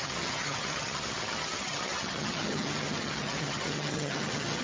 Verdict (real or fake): fake